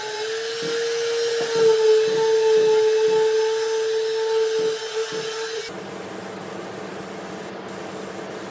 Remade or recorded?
recorded